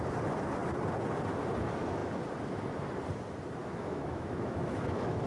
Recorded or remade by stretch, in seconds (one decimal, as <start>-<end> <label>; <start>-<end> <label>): 0.0-3.6 recorded; 3.6-5.3 remade